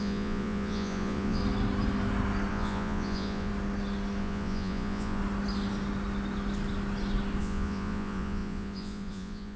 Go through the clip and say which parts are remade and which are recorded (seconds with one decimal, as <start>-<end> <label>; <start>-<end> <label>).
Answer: 0.0-1.4 remade; 1.4-2.5 recorded; 2.5-3.5 remade; 3.5-4.2 recorded; 4.2-5.2 remade; 5.2-7.4 recorded; 7.4-9.6 remade